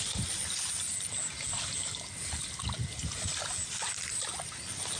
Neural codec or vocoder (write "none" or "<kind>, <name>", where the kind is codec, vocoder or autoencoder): none